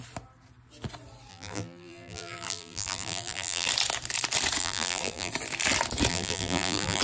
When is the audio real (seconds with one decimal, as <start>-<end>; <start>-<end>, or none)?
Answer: 0.0-1.3; 3.7-4.6; 5.3-6.1

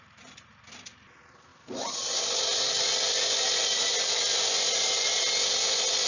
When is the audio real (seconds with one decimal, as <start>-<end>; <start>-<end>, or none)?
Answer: 0.0-3.8; 4.4-6.1

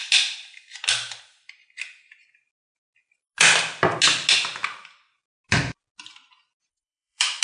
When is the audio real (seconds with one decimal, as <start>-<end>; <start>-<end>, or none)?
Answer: 0.0-6.7

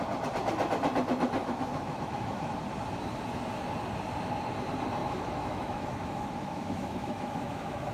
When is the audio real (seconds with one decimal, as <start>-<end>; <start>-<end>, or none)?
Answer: 0.0-1.4; 2.5-5.0

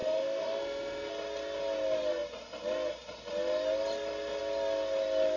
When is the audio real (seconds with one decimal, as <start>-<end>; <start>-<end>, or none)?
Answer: 1.1-5.4